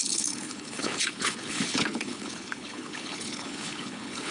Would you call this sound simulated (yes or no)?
yes